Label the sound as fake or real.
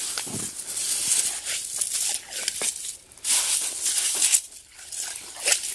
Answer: real